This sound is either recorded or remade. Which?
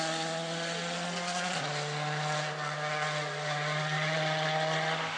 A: recorded